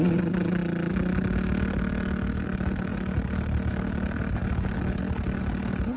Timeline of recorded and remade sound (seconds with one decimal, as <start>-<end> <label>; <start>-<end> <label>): 0.0-6.0 recorded